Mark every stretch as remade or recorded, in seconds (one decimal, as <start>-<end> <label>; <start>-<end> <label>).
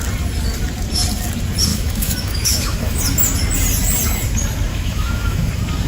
0.0-1.7 recorded; 1.7-3.0 remade; 3.0-4.7 recorded; 4.7-5.5 remade; 5.5-5.9 recorded